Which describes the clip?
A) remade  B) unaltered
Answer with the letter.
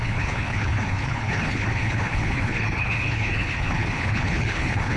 A